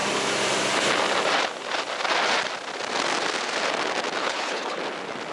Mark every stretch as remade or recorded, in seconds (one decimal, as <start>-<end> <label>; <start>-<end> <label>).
0.0-4.2 recorded; 4.2-4.8 remade; 4.8-5.3 recorded